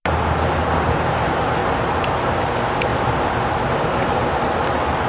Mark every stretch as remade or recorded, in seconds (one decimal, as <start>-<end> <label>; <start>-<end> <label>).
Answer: 0.0-1.6 recorded; 1.6-2.2 remade; 2.2-2.9 recorded; 2.9-3.6 remade; 3.6-5.1 recorded